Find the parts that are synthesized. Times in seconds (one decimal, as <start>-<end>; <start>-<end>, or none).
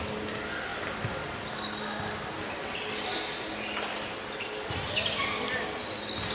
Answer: none